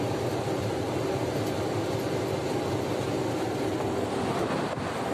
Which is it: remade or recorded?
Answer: recorded